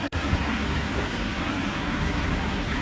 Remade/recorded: remade